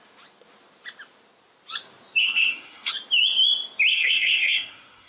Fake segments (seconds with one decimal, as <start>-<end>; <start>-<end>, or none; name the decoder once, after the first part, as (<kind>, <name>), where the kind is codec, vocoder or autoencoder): 2.2-2.9 (codec, SNAC); 3.9-5.1